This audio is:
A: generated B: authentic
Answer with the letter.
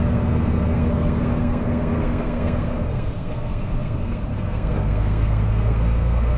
A